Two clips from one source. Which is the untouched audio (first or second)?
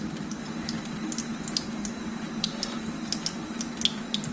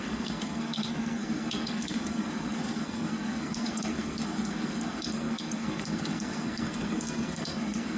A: first